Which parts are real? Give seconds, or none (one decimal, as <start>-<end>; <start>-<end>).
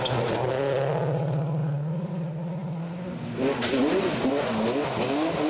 0.0-5.5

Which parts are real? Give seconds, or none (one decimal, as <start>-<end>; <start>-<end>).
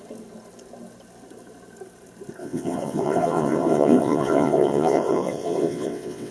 0.0-2.4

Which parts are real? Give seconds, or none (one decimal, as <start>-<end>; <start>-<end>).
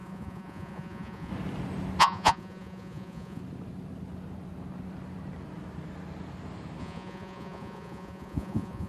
1.3-2.0; 3.4-6.8